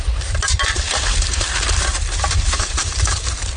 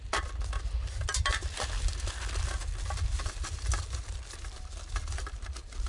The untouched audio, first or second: second